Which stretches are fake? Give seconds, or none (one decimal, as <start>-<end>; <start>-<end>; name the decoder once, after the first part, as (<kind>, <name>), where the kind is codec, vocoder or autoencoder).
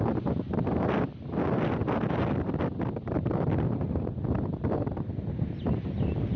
none